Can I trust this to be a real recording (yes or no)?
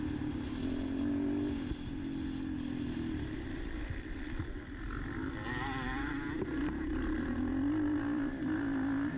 yes